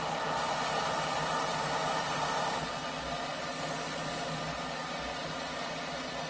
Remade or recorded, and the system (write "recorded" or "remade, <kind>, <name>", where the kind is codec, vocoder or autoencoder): recorded